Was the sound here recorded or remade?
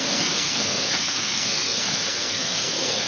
remade